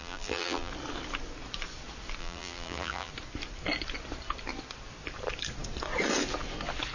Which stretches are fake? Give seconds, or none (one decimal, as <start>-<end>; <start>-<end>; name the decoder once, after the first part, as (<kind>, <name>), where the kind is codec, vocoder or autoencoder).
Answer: 0.0-0.7 (vocoder, BigVGAN v2); 2.2-3.1